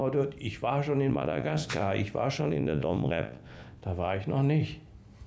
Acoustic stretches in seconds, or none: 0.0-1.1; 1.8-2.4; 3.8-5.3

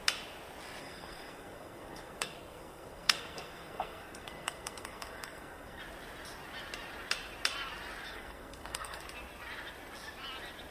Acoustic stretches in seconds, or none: 0.0-0.8; 5.8-8.1; 9.0-10.7

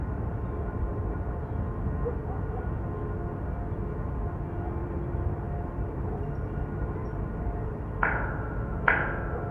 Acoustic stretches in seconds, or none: 1.4-4.8; 7.8-9.5